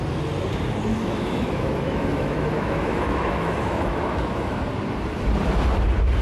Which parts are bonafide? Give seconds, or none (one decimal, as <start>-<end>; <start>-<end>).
0.0-0.9; 4.6-6.2